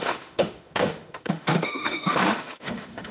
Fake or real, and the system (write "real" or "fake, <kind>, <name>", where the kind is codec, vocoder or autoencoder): fake, autoencoder, DAC-VAE